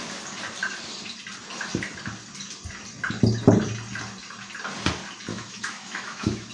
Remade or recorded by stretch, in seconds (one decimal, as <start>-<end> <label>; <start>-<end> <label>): 0.0-5.3 recorded; 5.3-6.5 remade